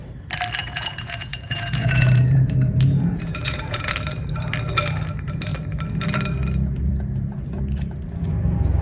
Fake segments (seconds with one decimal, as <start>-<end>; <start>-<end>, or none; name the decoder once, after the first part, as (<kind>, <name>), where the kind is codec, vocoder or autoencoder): 0.6-3.9 (vocoder, Vocos)